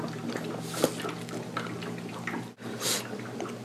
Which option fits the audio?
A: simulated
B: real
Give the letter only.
B